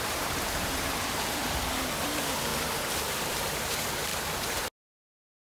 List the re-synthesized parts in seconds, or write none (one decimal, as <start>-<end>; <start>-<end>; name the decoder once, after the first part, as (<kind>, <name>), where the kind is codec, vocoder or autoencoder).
0.0-1.4 (vocoder, BigVGAN v2); 2.0-2.5; 3.3-4.1